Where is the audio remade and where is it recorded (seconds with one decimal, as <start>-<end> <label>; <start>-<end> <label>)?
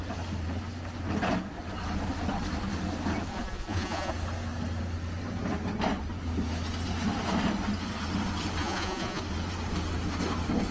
0.0-3.3 recorded; 3.3-4.1 remade; 4.1-8.6 recorded; 8.6-9.2 remade; 9.2-10.7 recorded